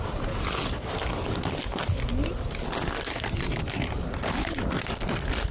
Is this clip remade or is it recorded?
recorded